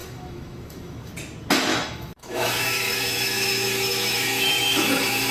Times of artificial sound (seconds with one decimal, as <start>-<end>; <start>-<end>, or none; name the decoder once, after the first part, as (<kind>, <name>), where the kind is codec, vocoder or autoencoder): 0.0-1.1 (autoencoder, DAC-VAE); 1.7-5.3